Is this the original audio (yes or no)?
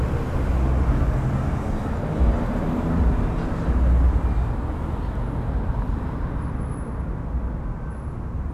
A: yes